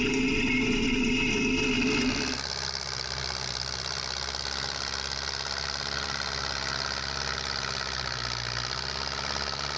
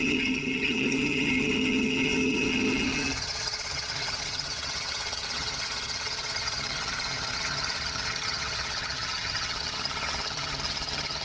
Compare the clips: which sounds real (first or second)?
first